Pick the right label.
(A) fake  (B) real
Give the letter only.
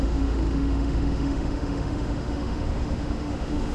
A